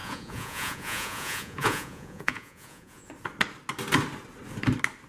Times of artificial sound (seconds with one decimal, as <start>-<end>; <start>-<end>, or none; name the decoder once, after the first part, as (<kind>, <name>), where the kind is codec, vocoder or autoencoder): 0.0-3.1 (vocoder, Vocos)